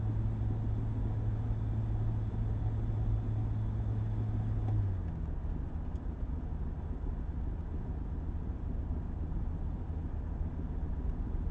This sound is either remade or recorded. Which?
recorded